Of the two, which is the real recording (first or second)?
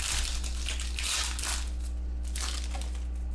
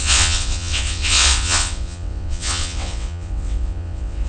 first